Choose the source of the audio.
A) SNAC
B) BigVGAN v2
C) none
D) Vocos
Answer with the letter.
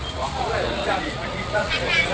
D